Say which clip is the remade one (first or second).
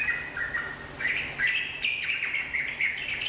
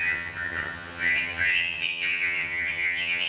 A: second